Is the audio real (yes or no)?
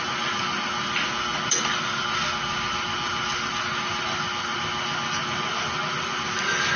yes